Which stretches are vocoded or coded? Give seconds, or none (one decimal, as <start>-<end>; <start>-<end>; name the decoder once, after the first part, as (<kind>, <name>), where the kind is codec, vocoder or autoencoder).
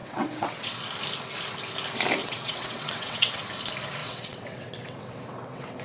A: 0.0-0.8 (vocoder, WaveNeXt); 2.2-3.4; 4.0-5.8